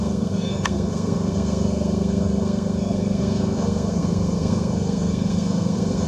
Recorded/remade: remade